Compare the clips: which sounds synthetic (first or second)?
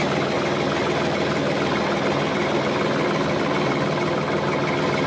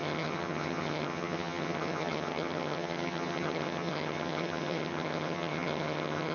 second